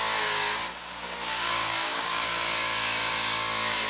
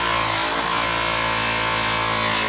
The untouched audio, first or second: second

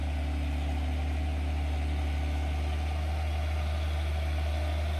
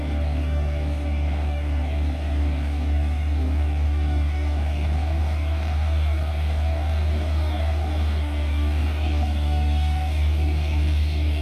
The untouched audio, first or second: first